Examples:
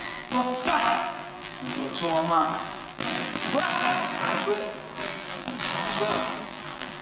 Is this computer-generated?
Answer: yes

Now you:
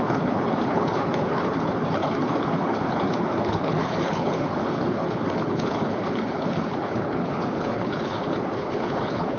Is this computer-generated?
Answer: yes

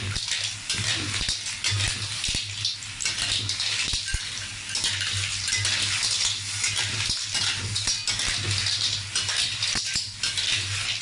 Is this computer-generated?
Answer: no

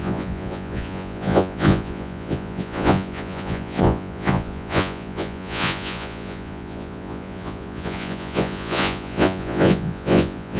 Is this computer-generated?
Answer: yes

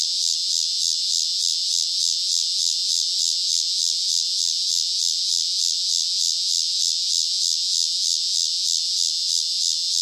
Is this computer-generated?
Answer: no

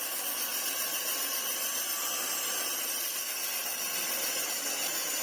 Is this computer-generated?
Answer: no